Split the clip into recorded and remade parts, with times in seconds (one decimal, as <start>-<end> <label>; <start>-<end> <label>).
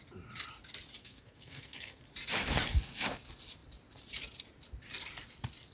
0.0-1.0 recorded; 1.0-2.0 remade; 2.0-5.7 recorded